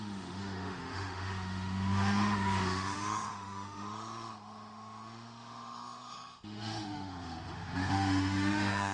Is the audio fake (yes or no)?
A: yes